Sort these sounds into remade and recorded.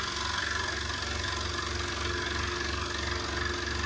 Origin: recorded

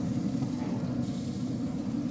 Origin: remade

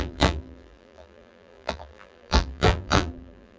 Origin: remade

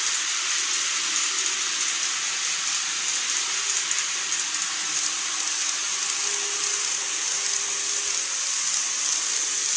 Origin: recorded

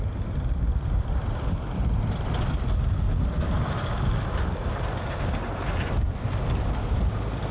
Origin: recorded